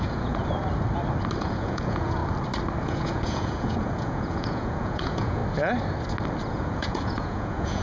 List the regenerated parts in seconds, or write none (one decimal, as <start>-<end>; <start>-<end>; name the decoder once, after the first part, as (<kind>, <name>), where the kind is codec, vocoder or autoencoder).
0.0-0.4 (vocoder, Vocos); 1.4-2.2; 2.8-5.4; 6.5-7.8